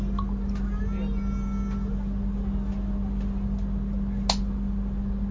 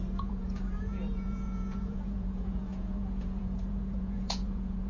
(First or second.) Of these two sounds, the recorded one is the first